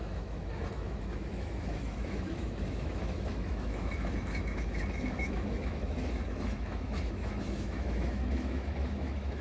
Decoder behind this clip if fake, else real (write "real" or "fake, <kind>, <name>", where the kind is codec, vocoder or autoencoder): fake, autoencoder, DAC-VAE